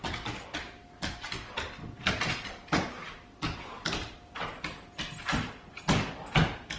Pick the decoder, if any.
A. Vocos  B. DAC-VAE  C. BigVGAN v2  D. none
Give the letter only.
D